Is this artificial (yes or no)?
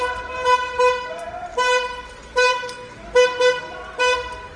no